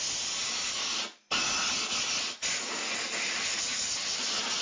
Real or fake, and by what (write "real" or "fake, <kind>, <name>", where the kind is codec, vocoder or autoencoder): real